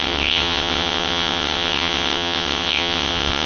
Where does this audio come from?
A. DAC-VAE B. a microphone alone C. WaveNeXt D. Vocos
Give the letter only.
C